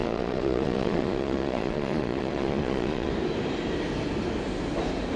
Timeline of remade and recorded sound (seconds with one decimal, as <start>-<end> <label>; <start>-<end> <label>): 0.0-3.1 remade; 3.1-5.2 recorded